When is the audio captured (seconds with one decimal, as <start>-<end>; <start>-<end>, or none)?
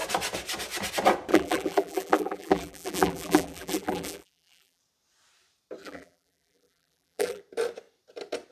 0.0-1.3; 4.8-5.8; 7.4-8.5